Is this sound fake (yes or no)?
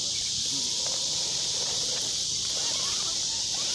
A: yes